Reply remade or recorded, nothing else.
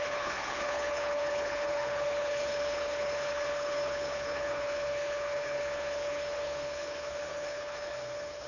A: remade